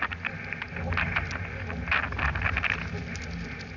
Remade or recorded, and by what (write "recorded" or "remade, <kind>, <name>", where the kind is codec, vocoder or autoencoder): recorded